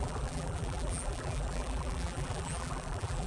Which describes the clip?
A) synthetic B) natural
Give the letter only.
A